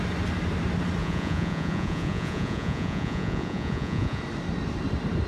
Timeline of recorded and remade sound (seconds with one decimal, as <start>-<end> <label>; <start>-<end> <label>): 0.0-1.0 recorded; 1.0-4.2 remade; 4.2-5.3 recorded